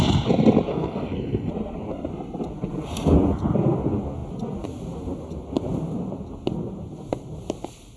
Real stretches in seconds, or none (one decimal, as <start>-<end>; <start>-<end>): 0.0-0.7; 1.5-8.0